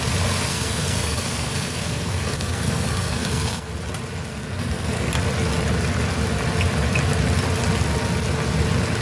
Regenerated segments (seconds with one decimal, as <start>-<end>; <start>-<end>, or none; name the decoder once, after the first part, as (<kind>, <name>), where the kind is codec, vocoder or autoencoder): 0.5-3.7 (codec, SNAC); 4.3-5.1